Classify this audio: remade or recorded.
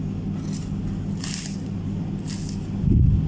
recorded